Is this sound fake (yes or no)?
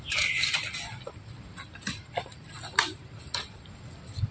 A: no